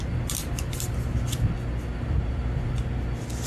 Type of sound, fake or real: real